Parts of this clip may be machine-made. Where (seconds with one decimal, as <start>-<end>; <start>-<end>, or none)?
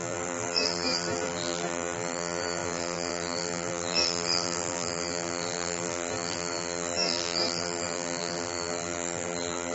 0.0-9.7